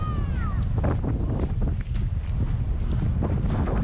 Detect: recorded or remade recorded